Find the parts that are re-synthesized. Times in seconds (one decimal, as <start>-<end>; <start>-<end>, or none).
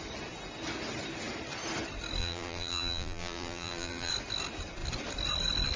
2.2-4.1